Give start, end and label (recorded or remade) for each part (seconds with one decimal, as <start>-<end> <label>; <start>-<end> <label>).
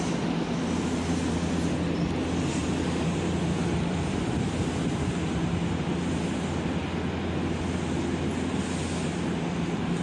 0.0-2.6 recorded; 2.6-4.5 remade; 4.5-10.0 recorded